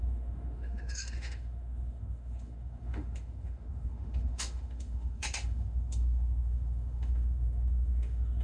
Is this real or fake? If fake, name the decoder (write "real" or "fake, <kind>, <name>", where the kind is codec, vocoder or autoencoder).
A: fake, autoencoder, DAC-VAE